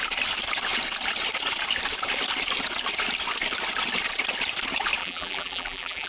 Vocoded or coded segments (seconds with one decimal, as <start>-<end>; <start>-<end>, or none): 5.0-6.1